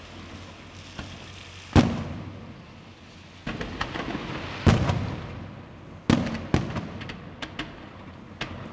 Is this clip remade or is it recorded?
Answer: recorded